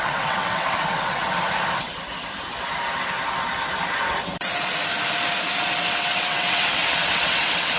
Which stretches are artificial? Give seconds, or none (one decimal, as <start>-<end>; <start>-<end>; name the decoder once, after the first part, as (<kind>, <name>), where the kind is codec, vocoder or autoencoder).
0.0-1.2 (vocoder, WaveNeXt); 5.9-7.8